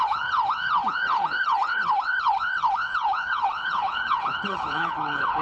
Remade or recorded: remade